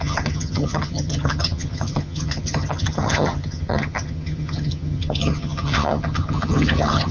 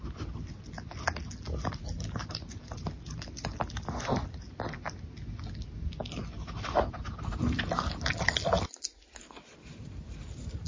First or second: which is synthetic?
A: first